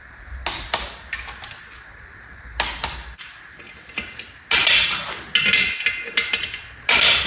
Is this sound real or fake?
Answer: real